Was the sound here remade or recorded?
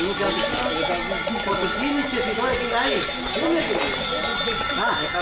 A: recorded